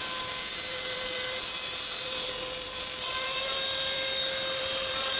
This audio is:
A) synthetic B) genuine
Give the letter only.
A